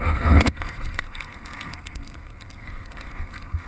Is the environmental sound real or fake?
fake